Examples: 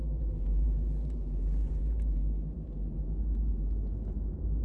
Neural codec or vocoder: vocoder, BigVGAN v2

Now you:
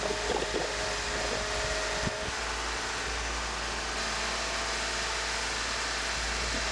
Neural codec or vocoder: none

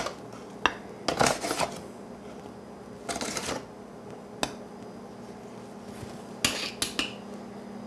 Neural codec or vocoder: none